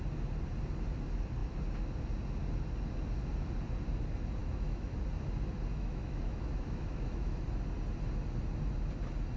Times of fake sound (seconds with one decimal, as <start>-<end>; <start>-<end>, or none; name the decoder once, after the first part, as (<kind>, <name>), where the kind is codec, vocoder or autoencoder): 4.4-5.0 (autoencoder, DAC-VAE); 5.7-7.4